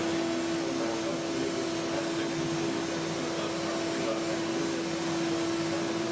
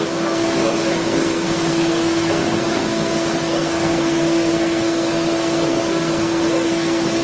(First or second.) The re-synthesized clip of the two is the second